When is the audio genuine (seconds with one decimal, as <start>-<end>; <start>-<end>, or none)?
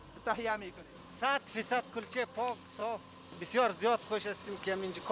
1.1-4.4